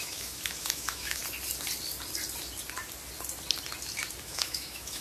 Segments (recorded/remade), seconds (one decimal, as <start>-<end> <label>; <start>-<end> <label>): 0.0-1.2 remade; 1.2-4.2 recorded; 4.2-5.0 remade